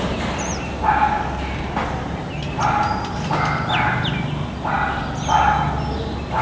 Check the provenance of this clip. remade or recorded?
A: recorded